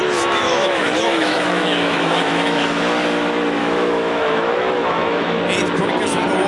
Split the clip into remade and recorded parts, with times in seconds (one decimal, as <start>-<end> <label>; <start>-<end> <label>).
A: 0.0-2.8 remade; 2.8-3.6 recorded; 3.6-5.4 remade; 5.4-6.5 recorded